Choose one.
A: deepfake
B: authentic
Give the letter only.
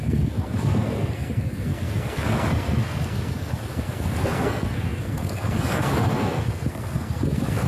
A